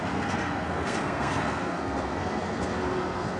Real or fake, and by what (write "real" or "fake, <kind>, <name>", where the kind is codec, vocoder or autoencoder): fake, codec, SNAC